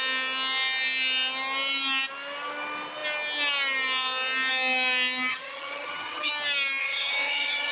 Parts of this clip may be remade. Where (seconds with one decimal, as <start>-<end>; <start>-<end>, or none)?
5.3-6.3; 6.8-7.7